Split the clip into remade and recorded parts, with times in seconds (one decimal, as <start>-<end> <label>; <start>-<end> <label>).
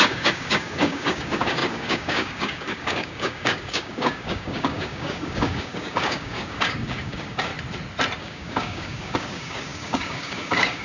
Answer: 0.0-7.5 remade; 7.5-8.2 recorded; 8.2-10.8 remade